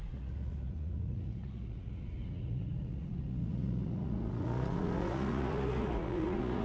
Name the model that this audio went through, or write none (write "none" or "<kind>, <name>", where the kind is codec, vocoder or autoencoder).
vocoder, Vocos